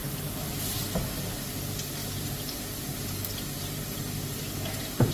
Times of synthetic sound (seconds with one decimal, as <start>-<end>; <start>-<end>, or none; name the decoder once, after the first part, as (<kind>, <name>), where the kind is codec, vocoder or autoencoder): 0.0-0.8 (vocoder, BigVGAN v2); 2.0-5.1